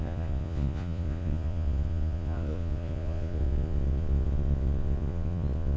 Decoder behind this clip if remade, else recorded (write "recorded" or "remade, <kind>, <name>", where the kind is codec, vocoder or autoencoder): remade, vocoder, Vocos